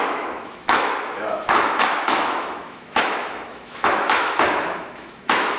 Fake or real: fake